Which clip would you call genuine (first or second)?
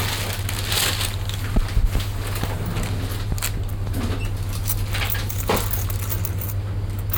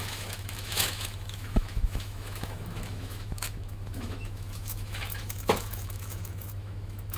first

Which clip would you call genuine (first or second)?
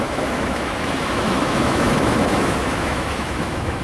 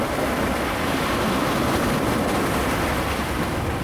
second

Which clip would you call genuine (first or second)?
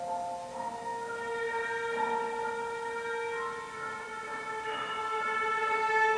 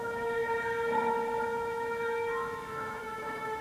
first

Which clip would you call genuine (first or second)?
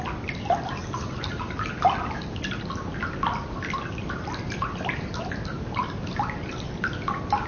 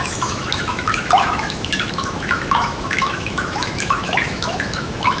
first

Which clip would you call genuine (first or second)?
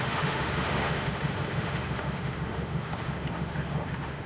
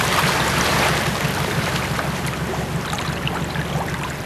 second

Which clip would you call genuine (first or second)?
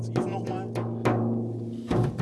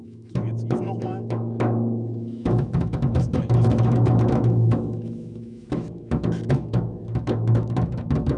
first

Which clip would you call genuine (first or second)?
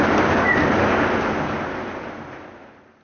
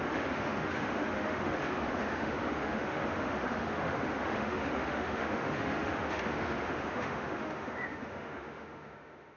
first